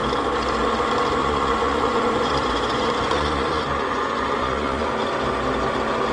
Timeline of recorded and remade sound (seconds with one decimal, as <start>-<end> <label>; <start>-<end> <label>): 0.0-1.2 recorded; 1.2-4.9 remade; 4.9-6.1 recorded